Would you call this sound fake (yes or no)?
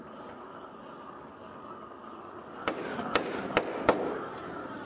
no